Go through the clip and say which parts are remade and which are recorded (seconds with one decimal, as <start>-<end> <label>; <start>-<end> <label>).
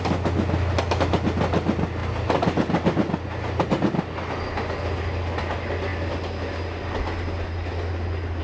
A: 0.0-8.4 recorded